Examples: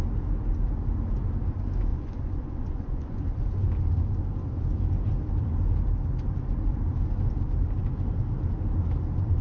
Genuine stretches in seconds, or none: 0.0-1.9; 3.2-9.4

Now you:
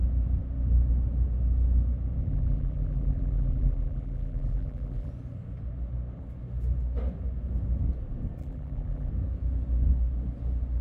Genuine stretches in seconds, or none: 0.0-2.2; 5.1-8.4; 9.1-10.8

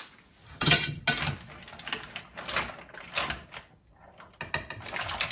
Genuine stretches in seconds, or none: 0.0-0.4; 1.0-5.3

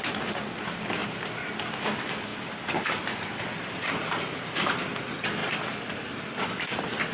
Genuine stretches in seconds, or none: 0.0-1.0; 1.6-2.3; 4.7-7.1

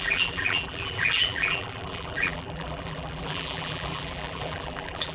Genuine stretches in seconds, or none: none

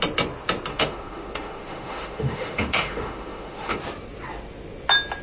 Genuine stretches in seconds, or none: 0.0-0.7; 3.8-5.2

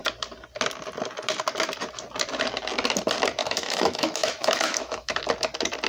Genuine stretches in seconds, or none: 0.0-3.4; 5.2-5.9

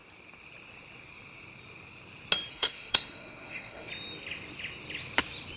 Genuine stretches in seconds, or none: 0.0-2.5; 3.9-5.6